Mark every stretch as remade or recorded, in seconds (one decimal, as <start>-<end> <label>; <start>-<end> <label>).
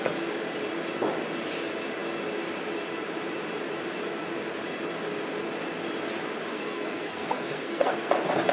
0.0-6.5 recorded; 6.5-8.1 remade; 8.1-8.5 recorded